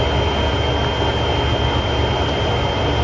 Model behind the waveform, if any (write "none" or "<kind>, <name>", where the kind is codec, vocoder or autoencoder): none